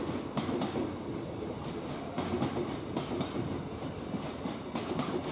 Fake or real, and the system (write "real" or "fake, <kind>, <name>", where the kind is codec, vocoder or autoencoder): real